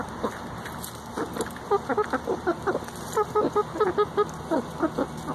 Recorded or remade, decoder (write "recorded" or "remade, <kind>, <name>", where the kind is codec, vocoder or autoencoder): recorded